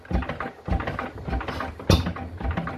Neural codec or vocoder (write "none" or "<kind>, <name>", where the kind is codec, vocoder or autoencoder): none